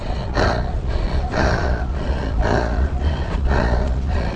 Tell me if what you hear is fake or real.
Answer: fake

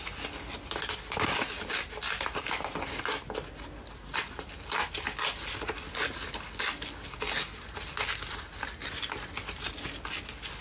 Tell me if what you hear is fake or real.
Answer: real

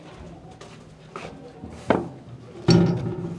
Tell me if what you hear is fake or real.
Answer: real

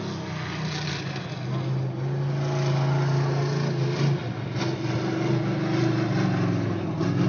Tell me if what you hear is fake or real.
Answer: real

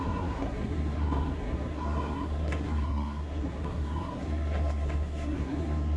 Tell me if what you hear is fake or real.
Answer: fake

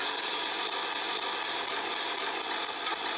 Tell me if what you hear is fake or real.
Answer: real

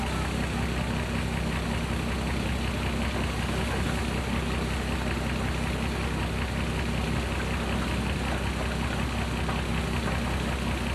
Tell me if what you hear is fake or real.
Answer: real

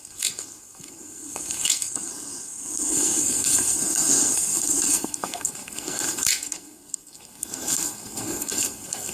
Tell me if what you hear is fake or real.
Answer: fake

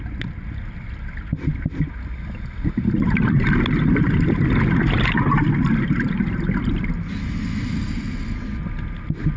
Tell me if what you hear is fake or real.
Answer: real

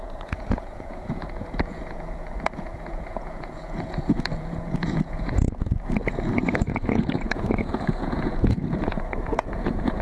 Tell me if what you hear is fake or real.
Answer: fake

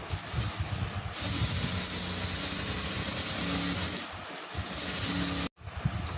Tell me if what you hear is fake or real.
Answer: real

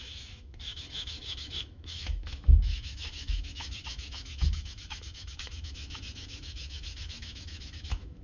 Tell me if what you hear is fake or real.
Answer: fake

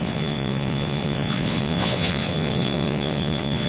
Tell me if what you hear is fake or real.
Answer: fake